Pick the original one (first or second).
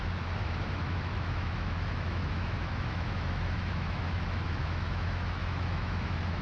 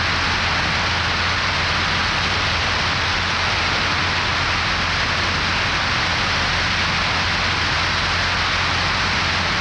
second